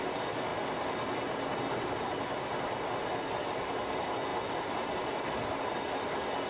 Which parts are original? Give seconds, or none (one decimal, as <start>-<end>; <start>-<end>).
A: 0.0-6.5